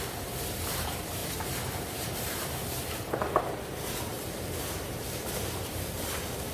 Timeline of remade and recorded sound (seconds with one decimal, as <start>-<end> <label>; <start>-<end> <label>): 0.0-6.5 remade